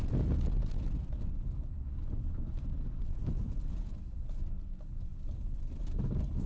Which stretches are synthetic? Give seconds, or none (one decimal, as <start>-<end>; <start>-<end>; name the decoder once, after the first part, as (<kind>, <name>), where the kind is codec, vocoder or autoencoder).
none